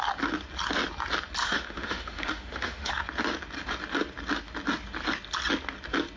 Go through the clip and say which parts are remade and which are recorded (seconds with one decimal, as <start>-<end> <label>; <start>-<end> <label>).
0.0-1.4 recorded; 1.4-2.9 remade; 2.9-6.2 recorded

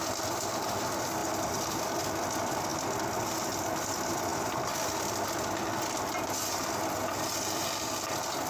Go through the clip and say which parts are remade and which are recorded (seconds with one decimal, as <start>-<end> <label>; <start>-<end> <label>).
0.0-8.5 recorded

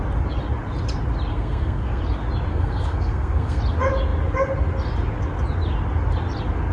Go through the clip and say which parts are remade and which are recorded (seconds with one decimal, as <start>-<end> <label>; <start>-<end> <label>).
0.0-1.3 recorded; 1.3-2.0 remade; 2.0-2.5 recorded; 2.5-3.6 remade; 3.6-6.7 recorded

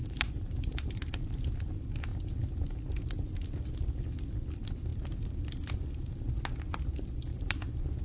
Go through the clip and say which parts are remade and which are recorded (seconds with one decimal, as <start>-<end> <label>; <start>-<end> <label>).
0.0-1.0 remade; 1.0-7.3 recorded; 7.3-8.0 remade

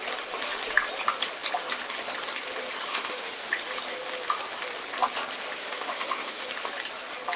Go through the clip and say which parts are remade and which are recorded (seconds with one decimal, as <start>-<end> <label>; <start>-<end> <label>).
0.0-2.9 recorded; 2.9-3.5 remade; 3.5-5.6 recorded; 5.6-6.5 remade; 6.5-7.4 recorded